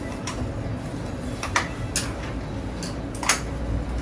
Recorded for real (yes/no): yes